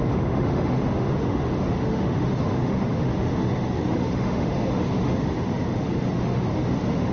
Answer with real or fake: fake